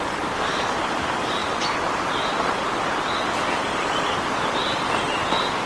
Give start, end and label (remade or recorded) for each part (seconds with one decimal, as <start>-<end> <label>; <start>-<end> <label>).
0.0-5.7 recorded